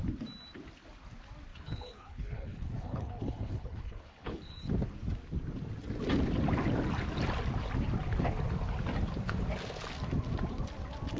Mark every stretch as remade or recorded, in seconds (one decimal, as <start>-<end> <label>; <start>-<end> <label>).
0.0-1.5 recorded; 1.5-4.7 remade; 4.7-11.2 recorded